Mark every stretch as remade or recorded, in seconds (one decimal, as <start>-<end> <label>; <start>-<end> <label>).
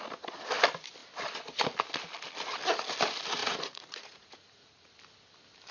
0.0-3.4 recorded; 3.4-4.9 remade; 4.9-5.7 recorded